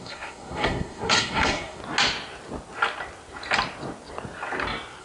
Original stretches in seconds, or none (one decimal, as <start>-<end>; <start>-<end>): 1.8-5.0